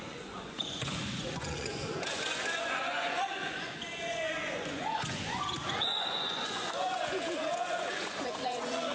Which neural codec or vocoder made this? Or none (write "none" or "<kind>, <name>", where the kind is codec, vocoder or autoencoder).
vocoder, Vocos